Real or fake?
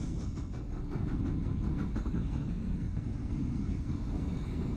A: fake